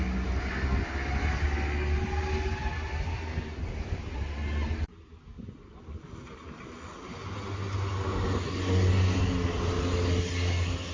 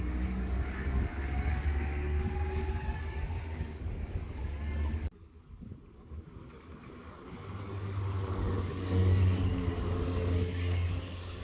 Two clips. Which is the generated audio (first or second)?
second